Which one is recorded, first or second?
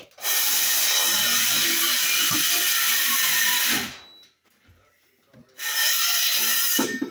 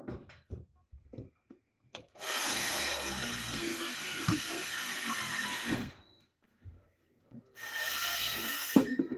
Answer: first